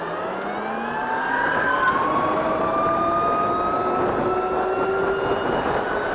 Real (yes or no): yes